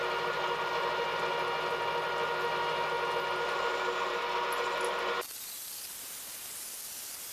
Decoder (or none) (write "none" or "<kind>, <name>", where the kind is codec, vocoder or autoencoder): none